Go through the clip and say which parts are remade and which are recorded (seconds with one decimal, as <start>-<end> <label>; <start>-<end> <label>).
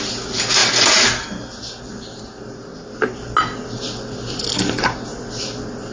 0.0-5.9 recorded